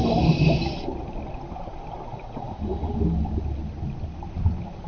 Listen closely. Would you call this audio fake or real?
real